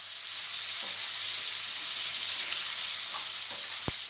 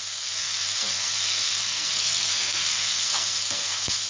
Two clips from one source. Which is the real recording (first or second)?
first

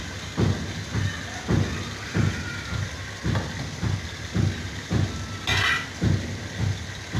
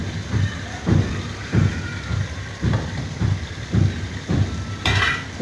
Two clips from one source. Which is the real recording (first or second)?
first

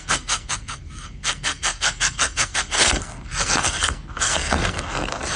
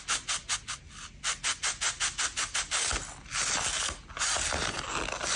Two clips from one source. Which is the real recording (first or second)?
second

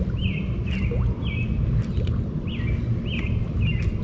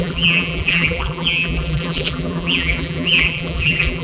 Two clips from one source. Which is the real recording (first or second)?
first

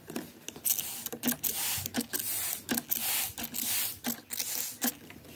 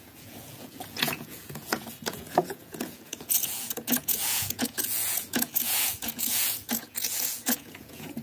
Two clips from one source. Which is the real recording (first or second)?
first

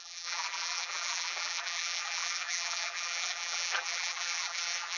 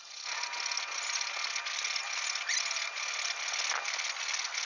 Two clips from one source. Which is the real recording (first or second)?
second